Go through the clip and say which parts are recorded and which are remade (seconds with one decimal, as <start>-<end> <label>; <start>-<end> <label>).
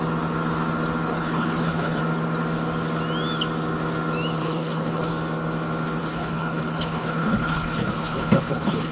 0.0-1.1 recorded; 1.1-2.0 remade; 2.0-4.4 recorded; 4.4-5.1 remade; 5.1-6.0 recorded; 6.0-8.9 remade